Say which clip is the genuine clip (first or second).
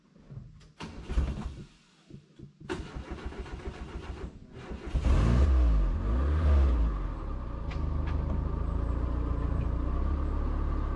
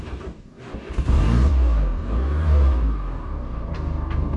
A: first